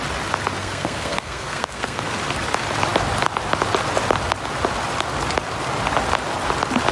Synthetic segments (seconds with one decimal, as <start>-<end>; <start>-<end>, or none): 0.6-2.0